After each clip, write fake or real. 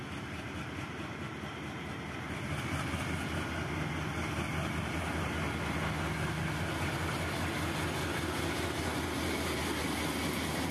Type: real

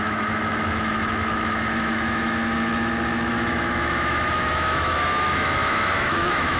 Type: fake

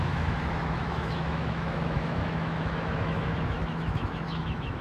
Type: fake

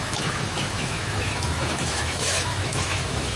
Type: fake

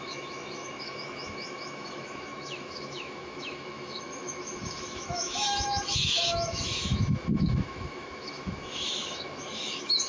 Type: fake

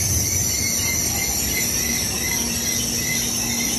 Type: real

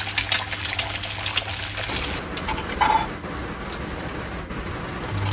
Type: real